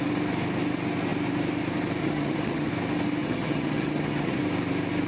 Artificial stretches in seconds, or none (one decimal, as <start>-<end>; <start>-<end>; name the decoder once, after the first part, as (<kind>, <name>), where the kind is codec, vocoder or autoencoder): 2.0-2.7 (vocoder, HiFi-GAN); 3.2-4.4